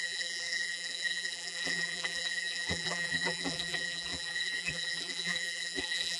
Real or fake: fake